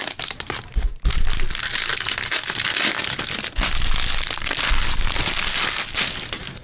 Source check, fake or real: real